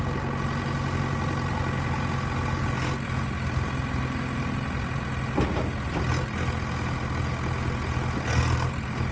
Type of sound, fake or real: real